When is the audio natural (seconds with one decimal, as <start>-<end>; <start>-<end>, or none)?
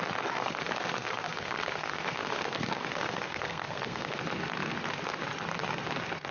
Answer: 0.0-0.4; 4.2-6.3